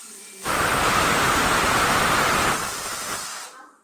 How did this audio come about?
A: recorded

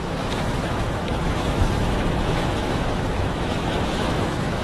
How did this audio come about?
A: remade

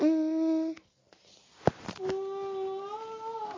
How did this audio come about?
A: recorded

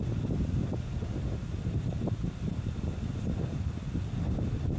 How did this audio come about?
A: recorded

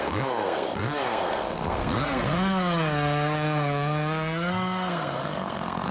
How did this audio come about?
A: remade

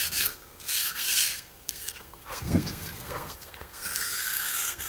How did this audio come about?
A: remade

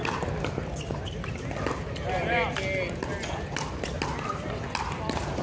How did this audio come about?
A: recorded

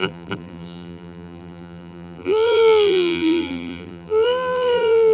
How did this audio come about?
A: remade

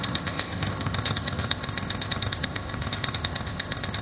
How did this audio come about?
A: remade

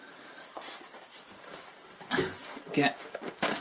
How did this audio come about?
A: recorded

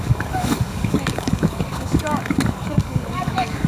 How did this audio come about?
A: remade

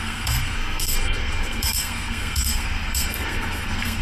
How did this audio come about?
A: remade